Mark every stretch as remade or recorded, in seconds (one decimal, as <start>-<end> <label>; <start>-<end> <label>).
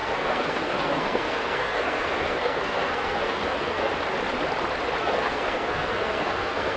0.0-3.9 remade; 3.9-5.0 recorded; 5.0-6.8 remade